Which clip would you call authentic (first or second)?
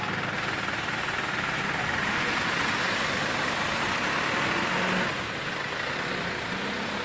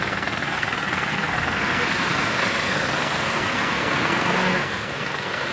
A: first